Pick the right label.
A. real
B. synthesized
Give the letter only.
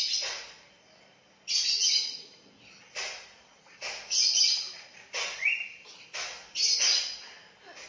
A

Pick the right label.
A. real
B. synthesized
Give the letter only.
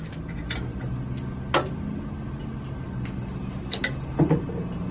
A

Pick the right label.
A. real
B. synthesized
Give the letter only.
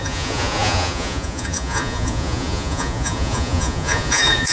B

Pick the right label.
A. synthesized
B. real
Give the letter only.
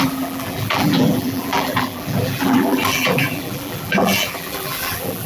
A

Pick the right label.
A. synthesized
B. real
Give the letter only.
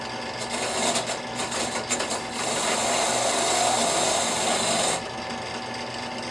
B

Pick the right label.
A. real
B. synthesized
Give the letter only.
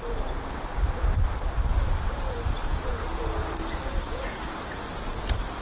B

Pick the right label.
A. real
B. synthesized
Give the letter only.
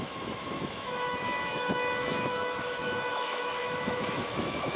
B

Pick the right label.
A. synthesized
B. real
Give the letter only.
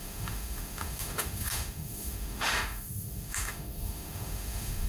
A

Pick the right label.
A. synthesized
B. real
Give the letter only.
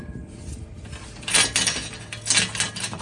B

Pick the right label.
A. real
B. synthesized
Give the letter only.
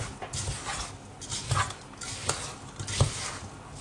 A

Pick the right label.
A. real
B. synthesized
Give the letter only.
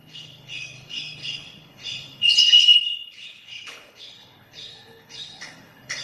B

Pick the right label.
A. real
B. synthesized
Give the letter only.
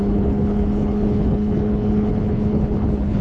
B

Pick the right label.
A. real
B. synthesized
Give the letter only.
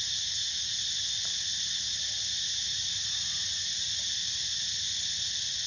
A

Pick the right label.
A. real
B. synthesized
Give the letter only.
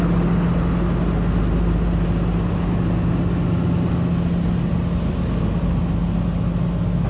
A